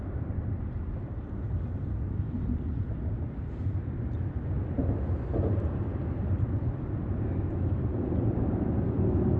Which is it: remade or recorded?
remade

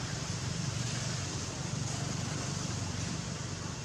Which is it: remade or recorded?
remade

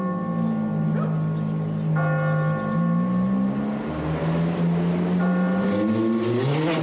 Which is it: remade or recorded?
recorded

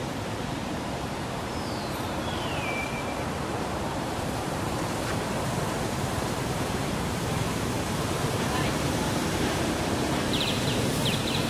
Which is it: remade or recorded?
remade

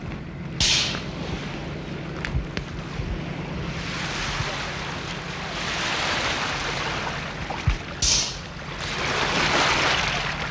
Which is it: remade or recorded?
recorded